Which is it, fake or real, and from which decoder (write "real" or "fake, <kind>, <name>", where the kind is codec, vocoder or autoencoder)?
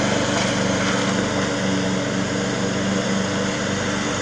real